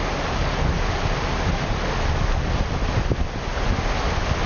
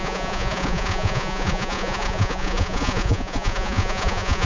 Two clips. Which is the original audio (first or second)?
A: first